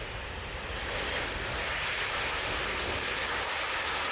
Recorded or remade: recorded